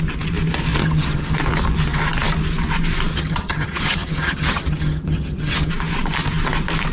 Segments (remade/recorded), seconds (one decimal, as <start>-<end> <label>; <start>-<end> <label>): 0.0-0.8 recorded; 0.8-1.3 remade; 1.3-3.1 recorded; 3.1-5.7 remade; 5.7-6.9 recorded